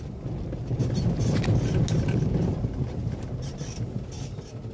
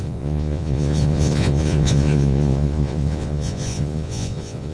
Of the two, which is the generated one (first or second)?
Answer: second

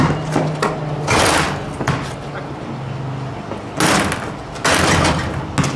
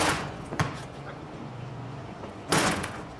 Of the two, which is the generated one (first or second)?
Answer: second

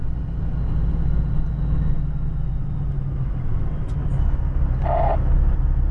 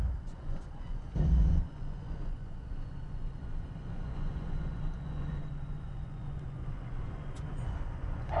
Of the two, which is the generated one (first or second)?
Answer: second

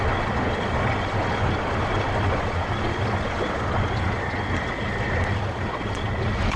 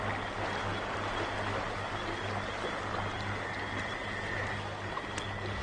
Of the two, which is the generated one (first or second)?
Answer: first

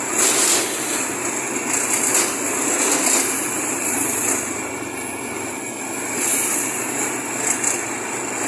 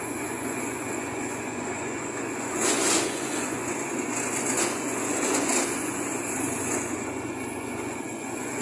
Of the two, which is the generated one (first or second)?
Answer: second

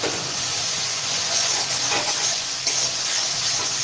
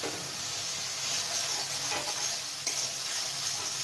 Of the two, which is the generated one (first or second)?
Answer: first